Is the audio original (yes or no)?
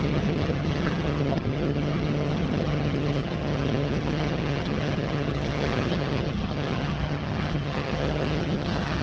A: no